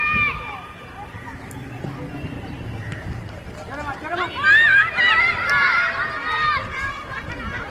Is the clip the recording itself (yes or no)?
yes